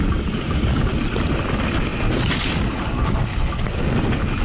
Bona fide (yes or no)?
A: yes